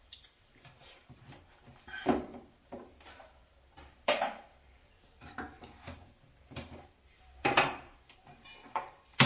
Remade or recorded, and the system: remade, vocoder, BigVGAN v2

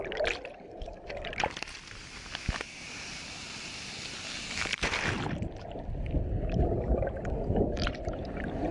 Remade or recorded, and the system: recorded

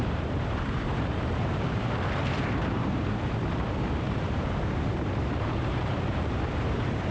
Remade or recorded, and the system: remade, vocoder, BigVGAN v2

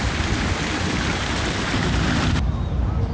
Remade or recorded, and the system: remade, vocoder, BigVGAN v2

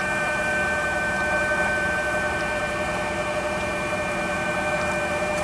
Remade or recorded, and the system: remade, vocoder, BigVGAN v2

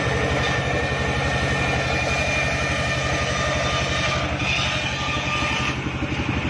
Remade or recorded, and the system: recorded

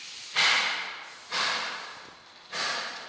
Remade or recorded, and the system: recorded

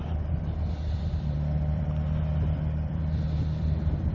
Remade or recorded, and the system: remade, vocoder, BigVGAN v2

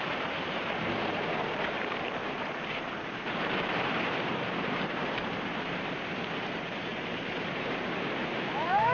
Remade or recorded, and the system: remade, vocoder, BigVGAN v2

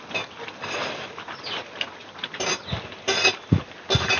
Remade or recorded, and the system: recorded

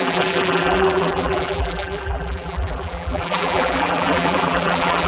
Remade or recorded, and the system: remade, vocoder, BigVGAN v2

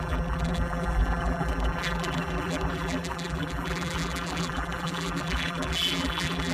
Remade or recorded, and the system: remade, vocoder, BigVGAN v2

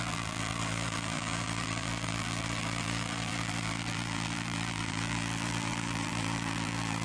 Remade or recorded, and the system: remade, vocoder, BigVGAN v2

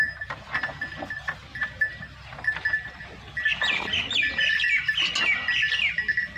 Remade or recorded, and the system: recorded